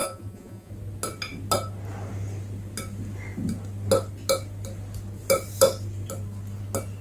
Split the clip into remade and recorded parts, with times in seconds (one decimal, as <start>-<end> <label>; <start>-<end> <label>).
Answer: 0.0-0.7 remade; 0.7-7.0 recorded